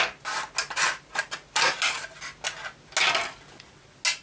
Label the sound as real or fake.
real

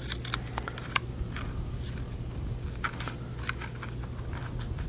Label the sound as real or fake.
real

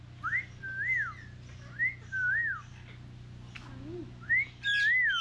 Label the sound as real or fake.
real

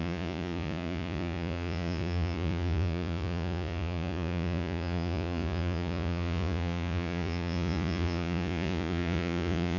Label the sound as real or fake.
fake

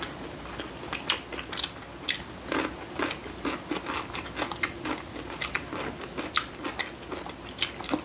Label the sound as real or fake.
real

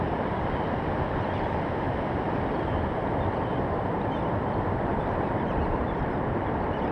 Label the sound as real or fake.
fake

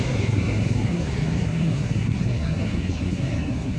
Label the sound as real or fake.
fake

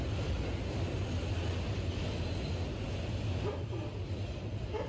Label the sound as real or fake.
real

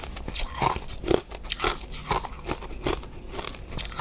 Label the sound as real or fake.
real